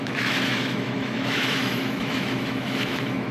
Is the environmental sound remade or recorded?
remade